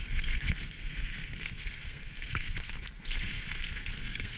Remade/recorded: remade